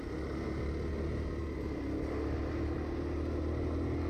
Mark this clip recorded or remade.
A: recorded